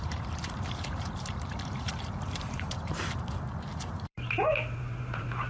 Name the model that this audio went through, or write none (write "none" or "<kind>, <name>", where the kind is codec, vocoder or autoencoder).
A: vocoder, BigVGAN v2